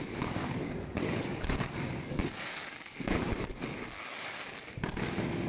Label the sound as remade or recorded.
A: remade